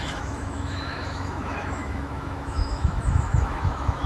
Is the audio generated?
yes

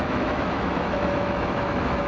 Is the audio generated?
yes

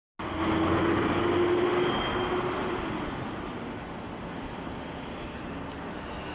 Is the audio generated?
no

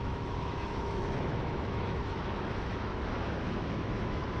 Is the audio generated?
yes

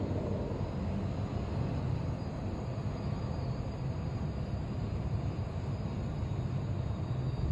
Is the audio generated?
no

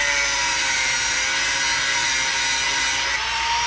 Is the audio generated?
no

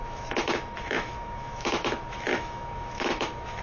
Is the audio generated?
yes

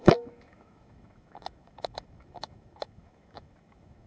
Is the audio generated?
yes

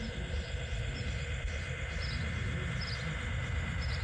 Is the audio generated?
no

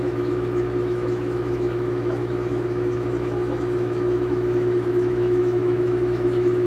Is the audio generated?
yes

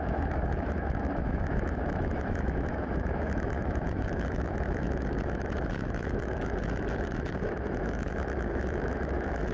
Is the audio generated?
yes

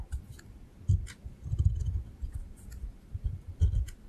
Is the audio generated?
no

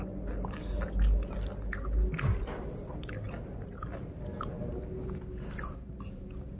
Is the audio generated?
no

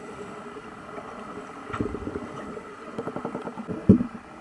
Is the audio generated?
no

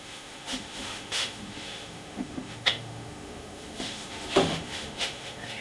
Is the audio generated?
yes